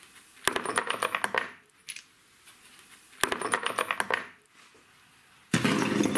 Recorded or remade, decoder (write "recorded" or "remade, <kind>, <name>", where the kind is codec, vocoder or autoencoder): recorded